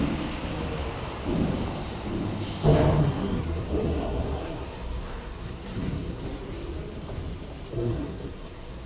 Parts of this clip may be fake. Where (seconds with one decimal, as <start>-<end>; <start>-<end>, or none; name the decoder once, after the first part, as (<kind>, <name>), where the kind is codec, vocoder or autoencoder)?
3.0-6.2 (codec, SNAC); 7.7-8.9